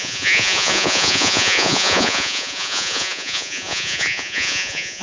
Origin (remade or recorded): remade